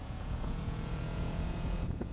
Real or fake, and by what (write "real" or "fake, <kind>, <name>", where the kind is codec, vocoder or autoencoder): fake, vocoder, Vocos